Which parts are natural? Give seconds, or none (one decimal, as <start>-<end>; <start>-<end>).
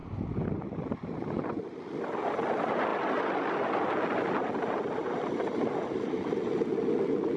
0.0-7.4